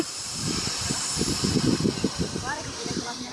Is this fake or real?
fake